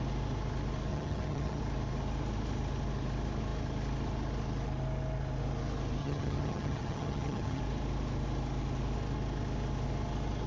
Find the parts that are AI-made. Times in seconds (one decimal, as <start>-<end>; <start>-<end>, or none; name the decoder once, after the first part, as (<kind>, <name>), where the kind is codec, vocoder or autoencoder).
0.9-1.6 (vocoder, HiFi-GAN); 6.0-7.6